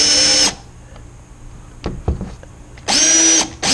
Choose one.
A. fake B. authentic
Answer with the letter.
B